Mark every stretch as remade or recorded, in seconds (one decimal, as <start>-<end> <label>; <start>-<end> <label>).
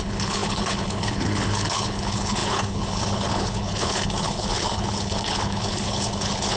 0.0-6.6 remade